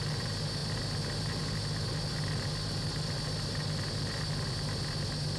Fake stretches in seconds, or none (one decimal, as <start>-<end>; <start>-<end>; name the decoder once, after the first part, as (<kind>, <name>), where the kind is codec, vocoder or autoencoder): none